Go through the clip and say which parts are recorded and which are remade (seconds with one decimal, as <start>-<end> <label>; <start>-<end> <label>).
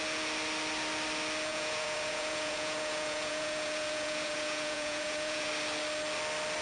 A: 0.0-1.5 recorded; 1.5-5.5 remade; 5.5-6.6 recorded